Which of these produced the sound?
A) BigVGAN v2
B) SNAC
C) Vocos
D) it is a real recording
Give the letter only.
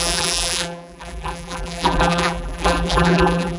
A